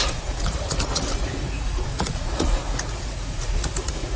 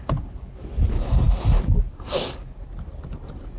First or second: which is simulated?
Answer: first